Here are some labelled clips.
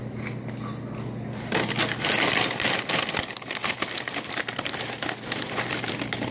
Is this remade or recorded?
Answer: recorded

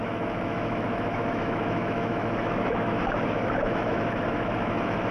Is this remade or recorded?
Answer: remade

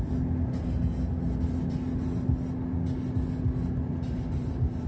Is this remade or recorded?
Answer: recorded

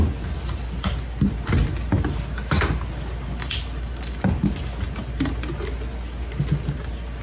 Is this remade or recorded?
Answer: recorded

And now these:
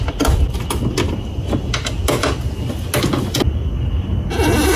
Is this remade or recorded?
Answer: recorded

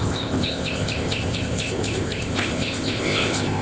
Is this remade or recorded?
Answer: remade